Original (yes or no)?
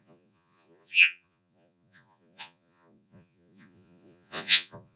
no